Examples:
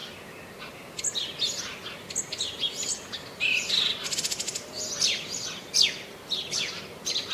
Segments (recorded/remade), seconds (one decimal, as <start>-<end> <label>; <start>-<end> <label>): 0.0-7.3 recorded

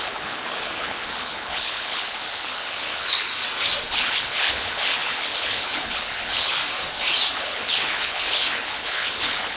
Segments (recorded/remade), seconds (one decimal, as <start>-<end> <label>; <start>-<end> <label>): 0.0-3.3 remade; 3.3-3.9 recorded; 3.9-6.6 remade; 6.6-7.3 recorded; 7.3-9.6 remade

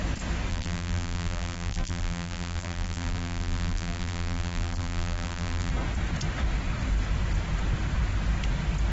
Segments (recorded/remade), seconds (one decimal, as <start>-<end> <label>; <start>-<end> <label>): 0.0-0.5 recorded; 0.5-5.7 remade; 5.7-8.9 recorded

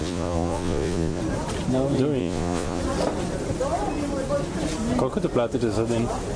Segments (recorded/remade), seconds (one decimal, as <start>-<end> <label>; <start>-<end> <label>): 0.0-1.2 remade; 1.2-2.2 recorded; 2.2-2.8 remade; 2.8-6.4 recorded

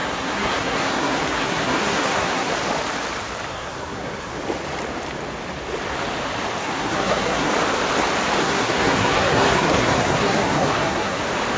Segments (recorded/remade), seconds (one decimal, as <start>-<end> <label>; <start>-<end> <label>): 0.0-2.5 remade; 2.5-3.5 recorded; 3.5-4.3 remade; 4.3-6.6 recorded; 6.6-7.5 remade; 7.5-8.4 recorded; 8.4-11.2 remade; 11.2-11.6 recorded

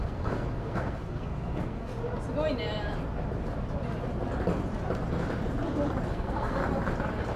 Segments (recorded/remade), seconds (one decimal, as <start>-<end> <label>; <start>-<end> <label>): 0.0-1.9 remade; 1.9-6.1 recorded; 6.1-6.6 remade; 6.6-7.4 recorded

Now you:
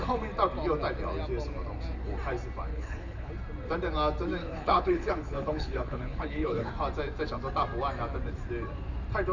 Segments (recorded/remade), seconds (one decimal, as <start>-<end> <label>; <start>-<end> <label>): 0.0-2.7 recorded; 2.7-3.3 remade; 3.3-4.4 recorded; 4.4-6.7 remade; 6.7-9.3 recorded